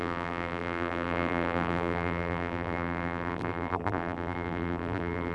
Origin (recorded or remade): remade